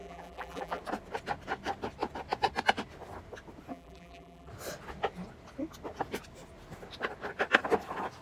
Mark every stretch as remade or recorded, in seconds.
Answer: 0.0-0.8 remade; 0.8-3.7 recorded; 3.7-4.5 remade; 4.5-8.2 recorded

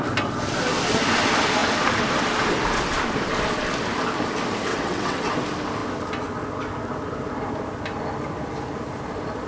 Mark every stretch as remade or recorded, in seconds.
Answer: 0.0-4.7 recorded; 4.7-5.3 remade; 5.3-9.5 recorded